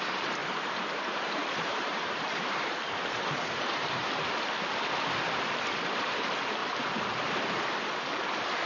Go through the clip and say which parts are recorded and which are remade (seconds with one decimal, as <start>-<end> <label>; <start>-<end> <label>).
0.0-4.0 remade; 4.0-5.8 recorded; 5.8-6.6 remade; 6.6-8.7 recorded